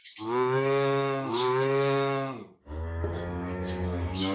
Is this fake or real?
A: fake